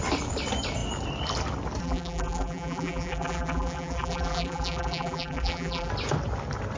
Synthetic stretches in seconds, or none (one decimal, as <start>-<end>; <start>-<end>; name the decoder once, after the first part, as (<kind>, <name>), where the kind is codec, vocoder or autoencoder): 1.8-5.9 (vocoder, BigVGAN v2)